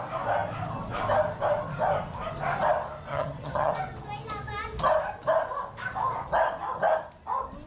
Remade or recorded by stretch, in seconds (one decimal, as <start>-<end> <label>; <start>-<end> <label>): 0.0-3.1 recorded; 3.1-3.7 remade; 3.7-7.7 recorded